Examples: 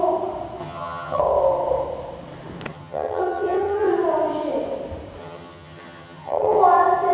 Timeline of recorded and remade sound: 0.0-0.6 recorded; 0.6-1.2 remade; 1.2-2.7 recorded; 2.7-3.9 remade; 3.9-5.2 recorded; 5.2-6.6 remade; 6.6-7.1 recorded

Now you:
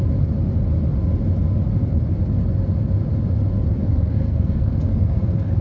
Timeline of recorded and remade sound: 0.0-3.8 recorded; 3.8-5.6 remade

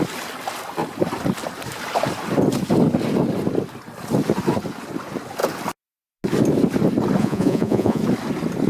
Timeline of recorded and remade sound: 0.0-7.2 recorded; 7.2-8.0 remade; 8.0-8.7 recorded

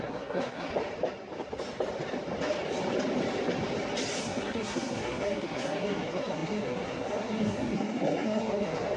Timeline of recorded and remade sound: 0.0-0.7 remade; 0.7-4.2 recorded; 4.2-9.0 remade

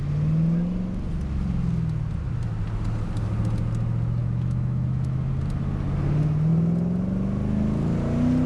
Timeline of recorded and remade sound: 0.0-4.2 recorded; 4.2-5.3 remade; 5.3-8.5 recorded